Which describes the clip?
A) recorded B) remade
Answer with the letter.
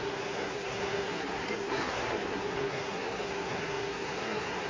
B